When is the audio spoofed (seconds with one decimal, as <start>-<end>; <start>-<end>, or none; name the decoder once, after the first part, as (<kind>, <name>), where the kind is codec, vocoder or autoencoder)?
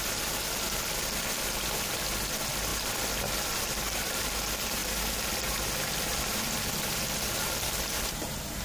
none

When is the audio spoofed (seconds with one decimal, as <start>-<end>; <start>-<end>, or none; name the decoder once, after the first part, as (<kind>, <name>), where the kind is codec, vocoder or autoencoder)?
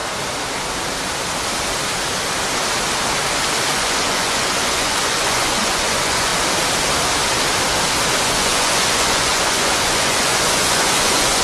3.7-6.3 (vocoder, Vocos); 8.2-11.4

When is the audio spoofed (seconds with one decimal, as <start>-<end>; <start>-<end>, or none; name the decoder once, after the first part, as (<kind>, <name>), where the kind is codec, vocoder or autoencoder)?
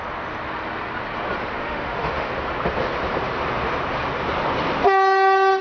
1.6-2.3 (autoencoder, DAC-VAE)